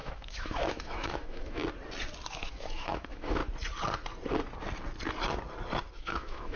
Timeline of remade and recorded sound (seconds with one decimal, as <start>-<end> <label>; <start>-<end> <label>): 0.0-1.6 remade; 1.6-2.3 recorded; 2.3-3.4 remade; 3.4-5.9 recorded; 5.9-6.6 remade